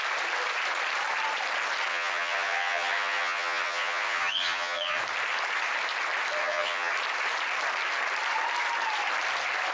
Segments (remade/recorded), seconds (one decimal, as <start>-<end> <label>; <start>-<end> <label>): 0.0-1.9 recorded; 1.9-5.0 remade; 5.0-6.4 recorded; 6.4-6.9 remade; 6.9-9.7 recorded